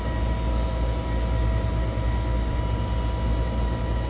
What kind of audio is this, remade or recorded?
recorded